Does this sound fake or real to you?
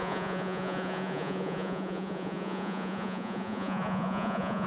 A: fake